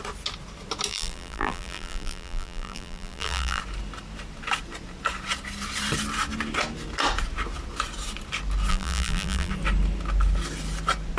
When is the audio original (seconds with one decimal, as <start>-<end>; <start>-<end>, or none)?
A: 0.0-0.9; 3.6-8.7; 9.5-11.2